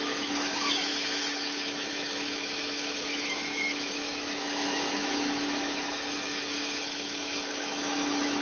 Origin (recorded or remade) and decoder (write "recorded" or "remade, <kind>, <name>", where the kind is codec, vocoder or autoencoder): remade, autoencoder, DAC-VAE